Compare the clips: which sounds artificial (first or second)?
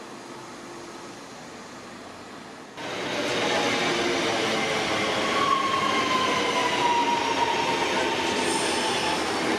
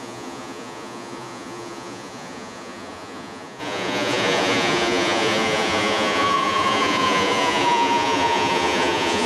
second